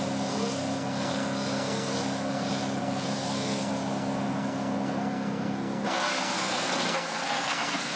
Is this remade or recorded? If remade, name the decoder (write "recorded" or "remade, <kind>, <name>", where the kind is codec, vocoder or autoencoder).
remade, codec, SNAC